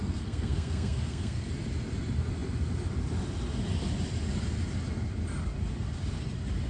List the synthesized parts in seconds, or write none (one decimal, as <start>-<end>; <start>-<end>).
0.0-1.5